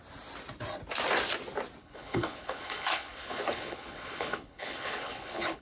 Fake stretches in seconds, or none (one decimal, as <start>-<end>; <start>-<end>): 1.8-5.6